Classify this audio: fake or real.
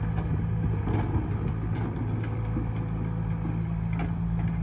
real